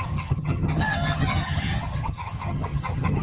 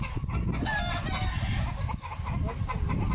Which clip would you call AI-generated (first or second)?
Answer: first